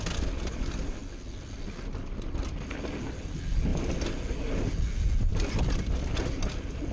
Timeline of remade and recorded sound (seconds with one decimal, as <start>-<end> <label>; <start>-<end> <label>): 0.0-6.9 recorded